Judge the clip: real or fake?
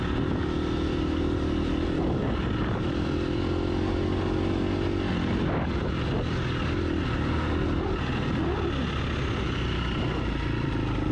real